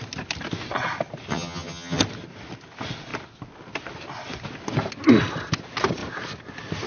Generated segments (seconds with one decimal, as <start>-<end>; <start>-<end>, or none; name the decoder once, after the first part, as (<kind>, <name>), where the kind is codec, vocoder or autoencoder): 1.3-2.0 (vocoder, HiFi-GAN)